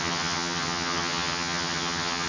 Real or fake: fake